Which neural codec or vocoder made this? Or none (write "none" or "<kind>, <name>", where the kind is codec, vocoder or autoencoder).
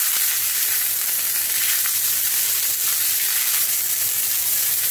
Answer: none